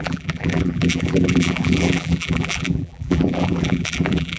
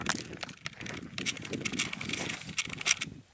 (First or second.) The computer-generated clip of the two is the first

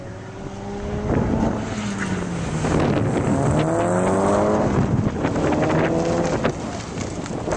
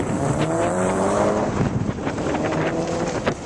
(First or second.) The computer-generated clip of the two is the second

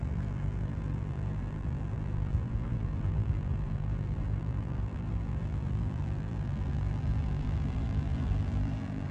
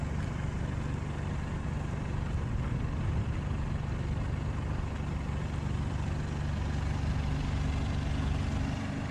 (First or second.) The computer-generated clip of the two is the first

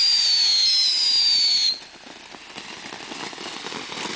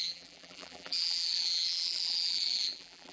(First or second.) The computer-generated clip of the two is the second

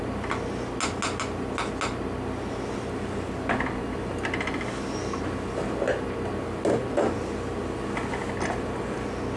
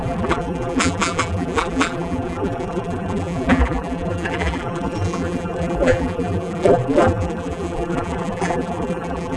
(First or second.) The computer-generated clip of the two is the second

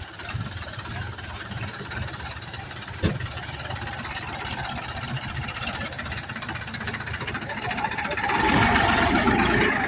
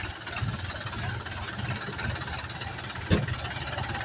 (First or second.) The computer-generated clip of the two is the first